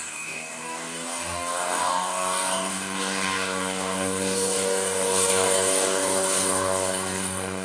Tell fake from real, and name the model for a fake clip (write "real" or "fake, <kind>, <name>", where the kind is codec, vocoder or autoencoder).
fake, codec, DAC